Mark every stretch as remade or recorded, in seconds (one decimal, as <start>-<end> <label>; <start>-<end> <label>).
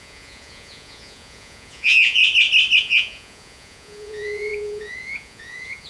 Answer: 0.0-2.2 remade; 2.2-2.8 recorded; 2.8-5.9 remade